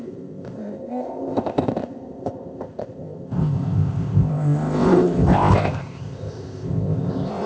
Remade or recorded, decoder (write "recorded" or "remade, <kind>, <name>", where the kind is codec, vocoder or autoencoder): remade, codec, ZipCodec